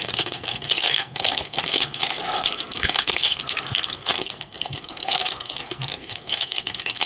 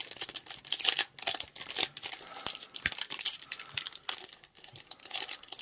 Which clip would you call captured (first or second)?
second